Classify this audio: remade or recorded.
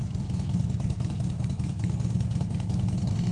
remade